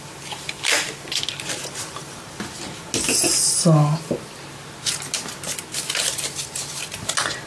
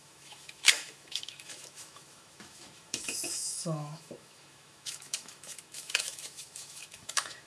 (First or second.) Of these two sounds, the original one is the first